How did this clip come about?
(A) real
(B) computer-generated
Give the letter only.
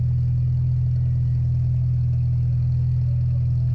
A